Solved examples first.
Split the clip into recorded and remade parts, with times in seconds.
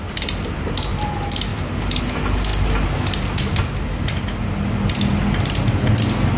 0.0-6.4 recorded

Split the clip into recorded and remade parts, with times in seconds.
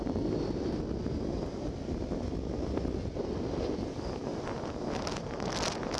0.0-6.0 recorded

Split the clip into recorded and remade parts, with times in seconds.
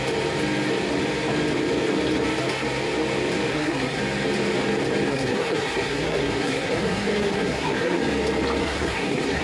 0.0-3.5 recorded; 3.5-4.0 remade; 4.0-5.1 recorded; 5.1-8.0 remade; 8.0-8.6 recorded; 8.6-9.4 remade